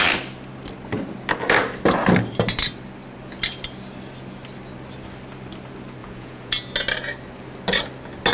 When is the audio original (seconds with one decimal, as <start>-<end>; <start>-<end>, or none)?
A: 0.0-6.0; 6.5-8.3